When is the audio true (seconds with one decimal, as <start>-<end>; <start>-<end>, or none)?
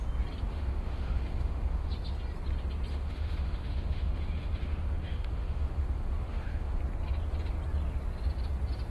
0.0-0.5; 1.9-2.9; 6.8-8.9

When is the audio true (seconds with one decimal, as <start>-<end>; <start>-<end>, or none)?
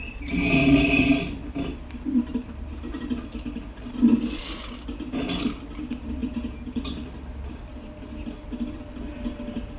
0.0-6.2; 6.8-9.8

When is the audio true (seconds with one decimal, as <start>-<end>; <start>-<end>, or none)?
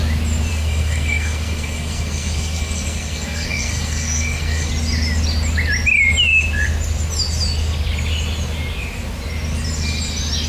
0.0-0.5; 4.7-10.5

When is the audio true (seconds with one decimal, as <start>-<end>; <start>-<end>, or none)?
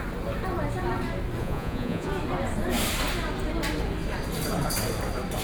0.0-1.4; 2.1-5.4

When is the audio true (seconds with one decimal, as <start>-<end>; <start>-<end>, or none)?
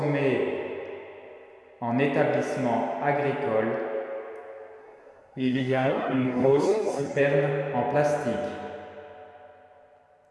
0.0-4.8; 7.2-10.3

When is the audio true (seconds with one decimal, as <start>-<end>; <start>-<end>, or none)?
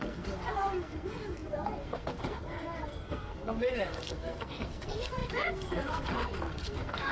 none